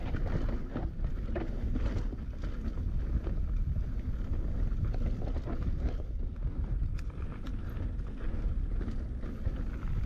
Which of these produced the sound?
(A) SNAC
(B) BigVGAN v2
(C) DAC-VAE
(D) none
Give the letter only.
D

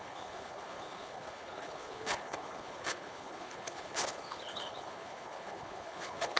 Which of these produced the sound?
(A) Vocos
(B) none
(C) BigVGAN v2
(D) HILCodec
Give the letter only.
D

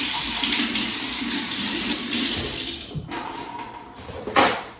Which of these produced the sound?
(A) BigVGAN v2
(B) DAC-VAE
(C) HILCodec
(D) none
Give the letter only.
D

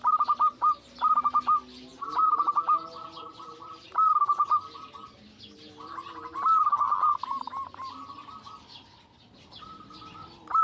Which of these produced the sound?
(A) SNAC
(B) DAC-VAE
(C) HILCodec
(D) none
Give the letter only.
D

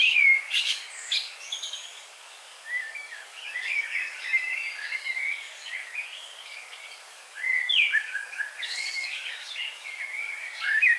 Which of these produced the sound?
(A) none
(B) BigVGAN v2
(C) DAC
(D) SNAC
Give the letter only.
C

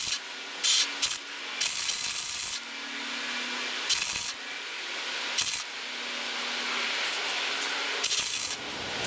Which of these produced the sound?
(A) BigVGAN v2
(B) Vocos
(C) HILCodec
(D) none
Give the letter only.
D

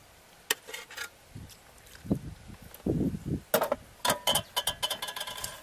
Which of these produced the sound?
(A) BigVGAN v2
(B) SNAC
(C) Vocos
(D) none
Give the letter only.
D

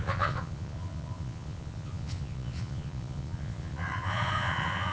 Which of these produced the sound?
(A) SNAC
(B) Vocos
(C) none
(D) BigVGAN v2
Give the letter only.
B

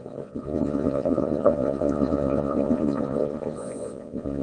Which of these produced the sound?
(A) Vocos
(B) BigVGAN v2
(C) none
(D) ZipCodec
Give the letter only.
A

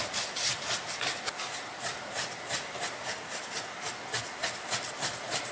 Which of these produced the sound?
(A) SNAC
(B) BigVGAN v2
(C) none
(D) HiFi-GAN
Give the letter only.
C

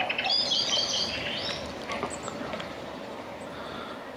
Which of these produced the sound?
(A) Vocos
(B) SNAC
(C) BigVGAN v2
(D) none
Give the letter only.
D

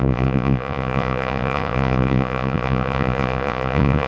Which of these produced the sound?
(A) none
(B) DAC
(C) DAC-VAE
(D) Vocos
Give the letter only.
D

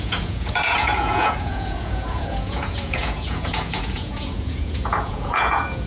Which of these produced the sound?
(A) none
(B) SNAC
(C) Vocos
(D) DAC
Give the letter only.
C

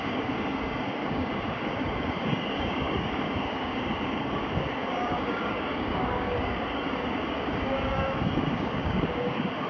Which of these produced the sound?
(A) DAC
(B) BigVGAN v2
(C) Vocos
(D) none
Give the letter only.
A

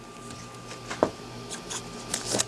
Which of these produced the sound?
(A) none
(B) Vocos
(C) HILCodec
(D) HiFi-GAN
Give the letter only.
A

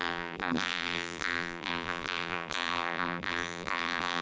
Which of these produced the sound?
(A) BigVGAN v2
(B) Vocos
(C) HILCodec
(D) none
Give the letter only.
A